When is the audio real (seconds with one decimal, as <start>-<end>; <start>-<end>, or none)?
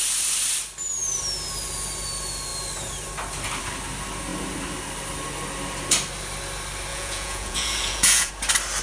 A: 0.0-6.9; 8.3-8.8